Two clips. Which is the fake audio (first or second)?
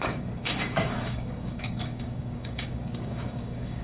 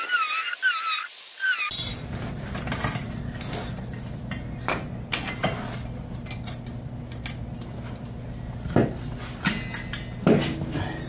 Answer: first